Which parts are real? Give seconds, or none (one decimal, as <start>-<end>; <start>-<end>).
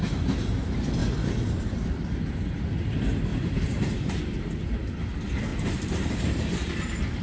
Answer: 0.0-3.3; 4.2-5.5; 6.8-7.2